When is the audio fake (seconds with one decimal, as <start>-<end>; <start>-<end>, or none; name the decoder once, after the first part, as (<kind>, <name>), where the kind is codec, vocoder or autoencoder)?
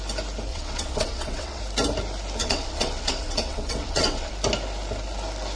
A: 0.5-1.6 (vocoder, WaveNeXt); 2.4-4.3